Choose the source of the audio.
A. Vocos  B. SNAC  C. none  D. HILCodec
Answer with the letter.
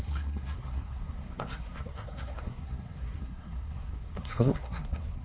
B